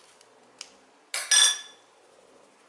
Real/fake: real